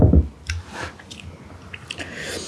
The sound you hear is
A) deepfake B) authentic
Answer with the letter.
B